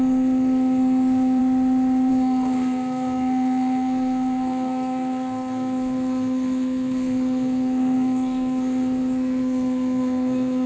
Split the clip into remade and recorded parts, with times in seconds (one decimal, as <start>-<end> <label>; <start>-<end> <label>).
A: 0.0-1.4 remade; 1.4-2.1 recorded; 2.1-10.7 remade